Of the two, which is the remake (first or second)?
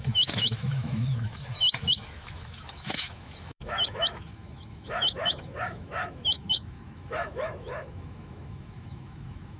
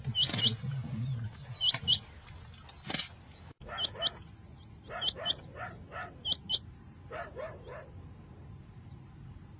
first